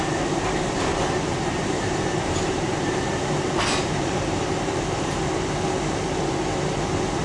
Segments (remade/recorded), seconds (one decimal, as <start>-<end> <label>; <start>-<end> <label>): 0.0-0.9 recorded; 0.9-5.2 remade; 5.2-7.2 recorded